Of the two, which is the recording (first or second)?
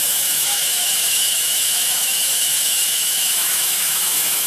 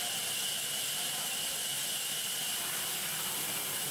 second